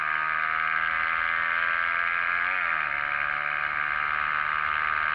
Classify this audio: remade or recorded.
recorded